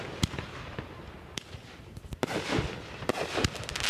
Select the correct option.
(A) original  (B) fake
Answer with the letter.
A